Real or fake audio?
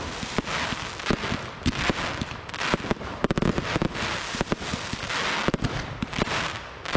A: real